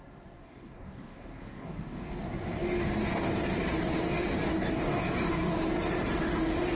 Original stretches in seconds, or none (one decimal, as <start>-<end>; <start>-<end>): 0.0-0.4; 2.2-6.8